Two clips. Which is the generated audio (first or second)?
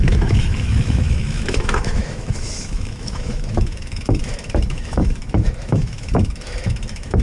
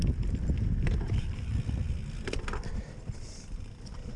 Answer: first